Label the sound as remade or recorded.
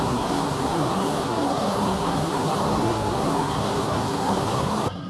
remade